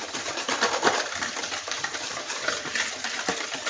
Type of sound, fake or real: fake